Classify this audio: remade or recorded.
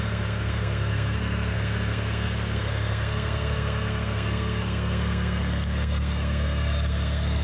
remade